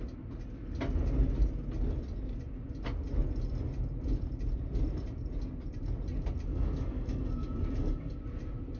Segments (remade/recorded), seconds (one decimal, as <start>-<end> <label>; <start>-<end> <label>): 0.0-6.5 recorded; 6.5-8.2 remade; 8.2-8.8 recorded